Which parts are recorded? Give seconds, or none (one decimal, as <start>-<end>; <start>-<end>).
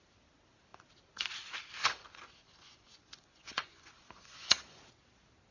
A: 0.0-1.8; 4.8-5.5